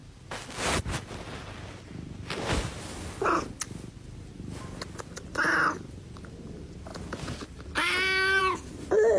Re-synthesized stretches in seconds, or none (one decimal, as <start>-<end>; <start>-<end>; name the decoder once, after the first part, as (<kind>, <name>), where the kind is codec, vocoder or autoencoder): none